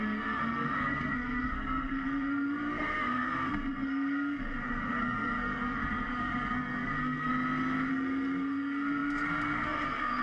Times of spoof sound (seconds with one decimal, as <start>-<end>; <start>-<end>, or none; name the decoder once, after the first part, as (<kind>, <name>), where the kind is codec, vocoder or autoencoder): 0.0-7.3 (codec, SNAC); 7.9-10.2